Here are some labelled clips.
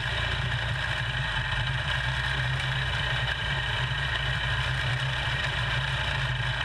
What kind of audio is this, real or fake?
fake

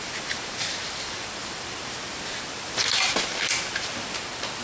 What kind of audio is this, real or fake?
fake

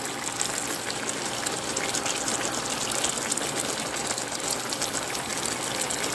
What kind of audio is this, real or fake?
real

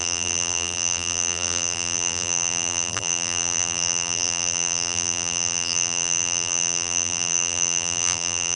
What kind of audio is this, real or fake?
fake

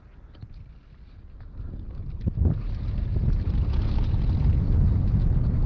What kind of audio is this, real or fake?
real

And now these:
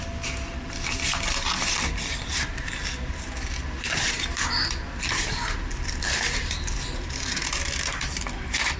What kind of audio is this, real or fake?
fake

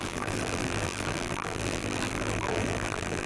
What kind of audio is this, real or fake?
fake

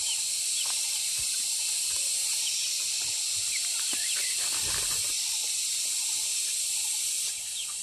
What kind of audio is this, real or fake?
fake